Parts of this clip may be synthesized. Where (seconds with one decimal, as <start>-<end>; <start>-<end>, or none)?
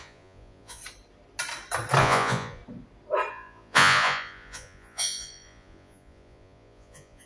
0.0-0.8; 2.0-2.6; 3.3-7.3